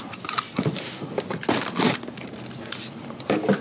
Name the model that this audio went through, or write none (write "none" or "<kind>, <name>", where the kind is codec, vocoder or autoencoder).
none